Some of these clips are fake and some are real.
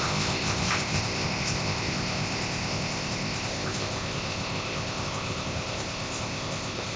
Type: fake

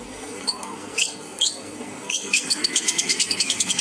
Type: fake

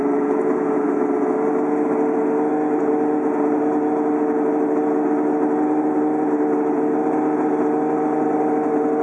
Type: real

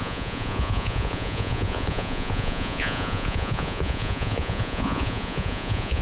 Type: fake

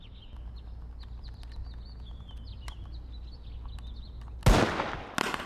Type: real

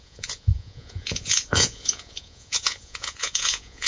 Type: fake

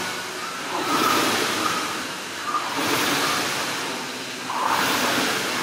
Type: real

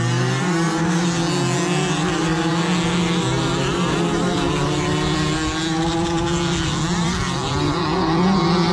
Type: real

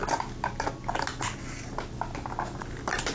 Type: real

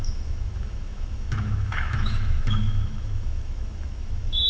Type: fake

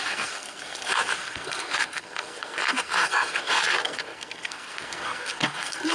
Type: fake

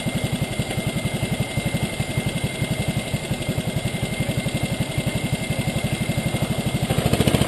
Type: real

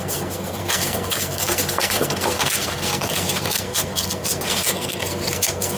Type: fake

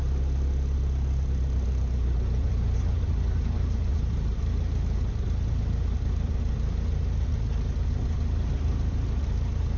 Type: real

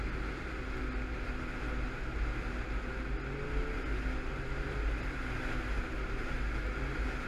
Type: real